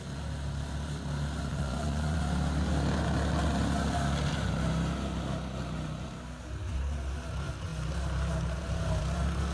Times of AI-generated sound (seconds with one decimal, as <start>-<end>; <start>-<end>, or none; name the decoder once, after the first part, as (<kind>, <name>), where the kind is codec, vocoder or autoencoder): 1.5-2.2 (vocoder, Vocos)